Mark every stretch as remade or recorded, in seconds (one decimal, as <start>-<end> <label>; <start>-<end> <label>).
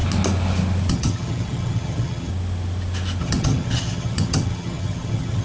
0.0-0.9 recorded; 0.9-2.3 remade; 2.3-3.2 recorded; 3.2-5.4 remade